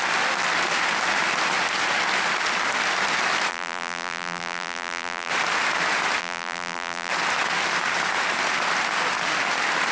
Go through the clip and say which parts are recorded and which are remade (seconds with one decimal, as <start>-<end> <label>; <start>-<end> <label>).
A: 0.0-3.5 recorded; 3.5-5.3 remade; 5.3-6.2 recorded; 6.2-7.1 remade; 7.1-9.9 recorded